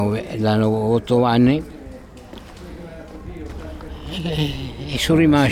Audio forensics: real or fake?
real